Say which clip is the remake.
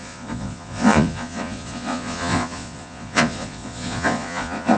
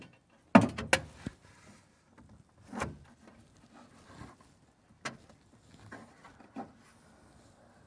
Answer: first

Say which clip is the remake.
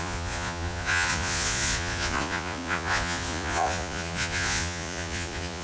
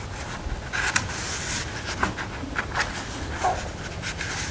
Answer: first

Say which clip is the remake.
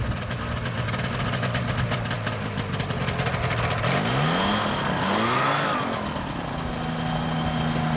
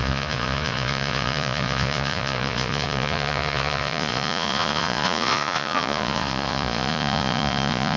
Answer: second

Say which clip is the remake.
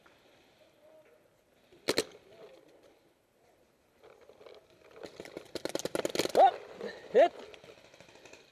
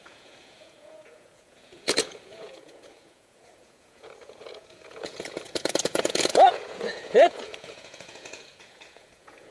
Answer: second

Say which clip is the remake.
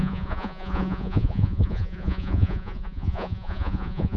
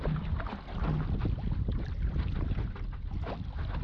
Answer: first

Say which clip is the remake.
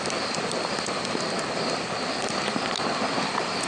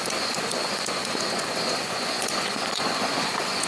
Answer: second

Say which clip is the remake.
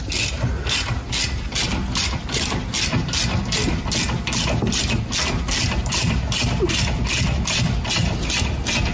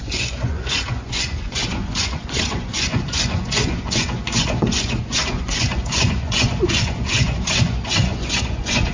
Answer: second